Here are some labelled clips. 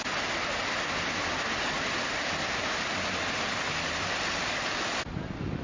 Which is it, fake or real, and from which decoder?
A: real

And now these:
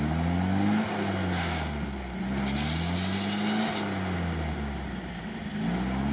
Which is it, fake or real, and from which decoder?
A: real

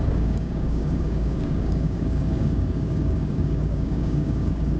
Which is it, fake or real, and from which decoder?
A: fake, codec, DAC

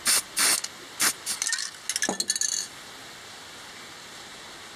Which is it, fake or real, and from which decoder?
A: real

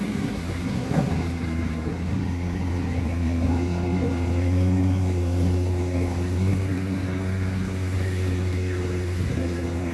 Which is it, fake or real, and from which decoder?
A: fake, codec, SNAC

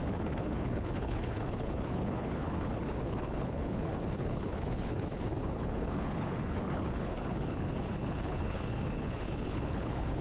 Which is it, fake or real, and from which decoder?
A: fake, codec, HILCodec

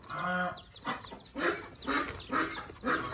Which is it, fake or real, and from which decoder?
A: real